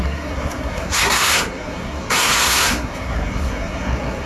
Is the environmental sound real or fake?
fake